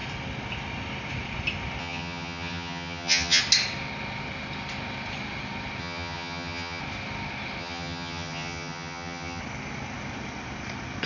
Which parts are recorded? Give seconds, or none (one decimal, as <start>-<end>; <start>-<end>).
0.0-1.8; 3.4-5.8; 6.8-7.6; 9.4-11.1